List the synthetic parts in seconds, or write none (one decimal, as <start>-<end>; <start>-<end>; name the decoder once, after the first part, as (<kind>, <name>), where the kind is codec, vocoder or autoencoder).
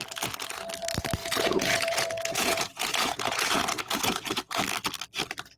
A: 1.2-4.6 (vocoder, Vocos)